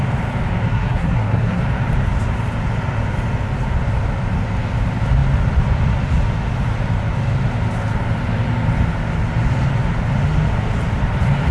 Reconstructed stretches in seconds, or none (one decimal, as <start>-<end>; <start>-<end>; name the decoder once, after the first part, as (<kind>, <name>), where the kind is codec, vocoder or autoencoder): 0.7-1.6 (codec, SNAC)